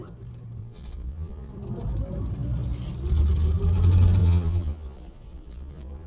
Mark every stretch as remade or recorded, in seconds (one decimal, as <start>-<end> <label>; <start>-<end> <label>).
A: 0.0-0.6 recorded; 0.6-1.5 remade; 1.5-4.2 recorded; 4.2-6.1 remade